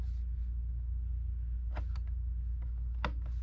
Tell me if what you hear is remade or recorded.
recorded